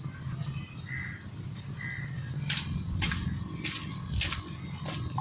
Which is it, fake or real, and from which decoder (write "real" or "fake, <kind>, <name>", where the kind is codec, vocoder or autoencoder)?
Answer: real